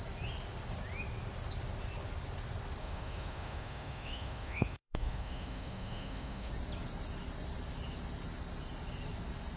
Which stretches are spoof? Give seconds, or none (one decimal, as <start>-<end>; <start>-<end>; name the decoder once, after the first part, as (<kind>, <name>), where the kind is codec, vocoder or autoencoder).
2.8-6.5 (autoencoder, DAC-VAE)